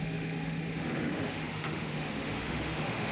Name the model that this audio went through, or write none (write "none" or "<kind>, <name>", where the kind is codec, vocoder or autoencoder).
autoencoder, DAC-VAE